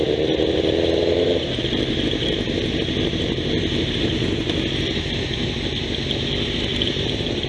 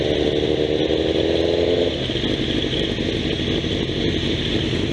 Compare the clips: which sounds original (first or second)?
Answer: second